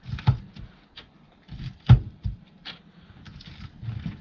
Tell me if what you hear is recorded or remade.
recorded